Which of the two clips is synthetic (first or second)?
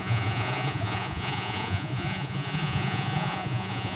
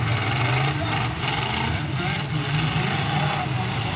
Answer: first